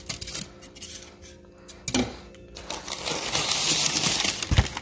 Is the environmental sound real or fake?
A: real